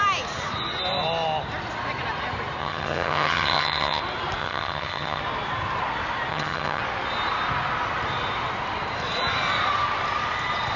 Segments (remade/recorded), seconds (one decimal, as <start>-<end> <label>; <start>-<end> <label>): 0.0-2.6 recorded; 2.6-4.0 remade; 4.0-4.4 recorded; 4.4-5.2 remade; 5.2-6.3 recorded; 6.3-6.8 remade; 6.8-10.8 recorded